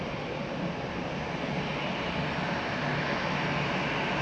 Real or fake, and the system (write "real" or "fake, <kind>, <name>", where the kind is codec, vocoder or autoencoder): real